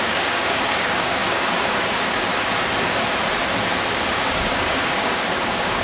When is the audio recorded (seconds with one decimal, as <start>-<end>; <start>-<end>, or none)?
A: 2.3-4.1